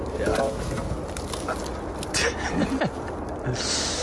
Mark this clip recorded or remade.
recorded